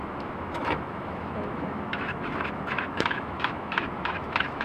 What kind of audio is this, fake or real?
fake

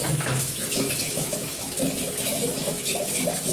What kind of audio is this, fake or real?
fake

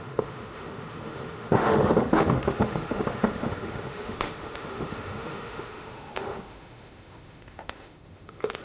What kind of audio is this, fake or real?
fake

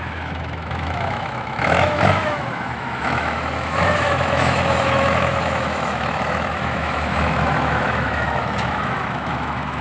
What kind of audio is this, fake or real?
fake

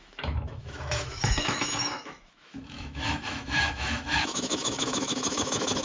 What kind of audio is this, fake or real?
fake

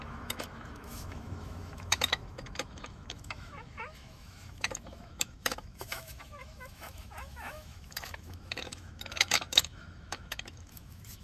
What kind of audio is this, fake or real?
fake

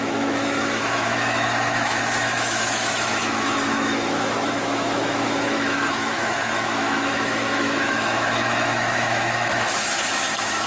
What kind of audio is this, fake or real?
fake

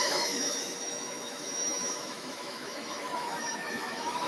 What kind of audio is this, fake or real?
fake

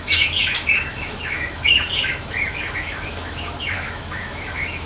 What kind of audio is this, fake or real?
fake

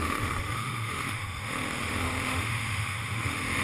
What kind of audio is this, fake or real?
fake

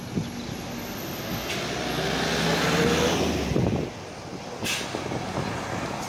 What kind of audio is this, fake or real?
real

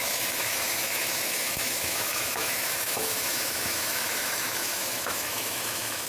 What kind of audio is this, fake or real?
fake